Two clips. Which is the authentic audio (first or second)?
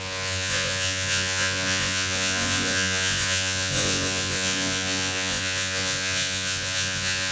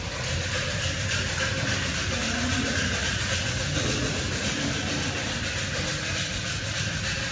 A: second